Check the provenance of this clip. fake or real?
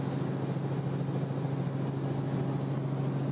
real